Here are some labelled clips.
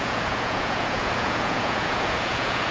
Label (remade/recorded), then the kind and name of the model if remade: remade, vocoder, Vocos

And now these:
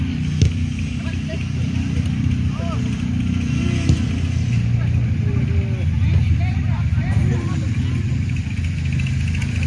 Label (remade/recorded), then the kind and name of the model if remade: recorded